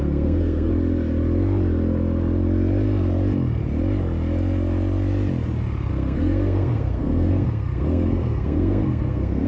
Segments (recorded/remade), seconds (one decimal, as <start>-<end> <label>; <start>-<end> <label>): 0.0-0.7 remade; 0.7-5.9 recorded; 5.9-9.5 remade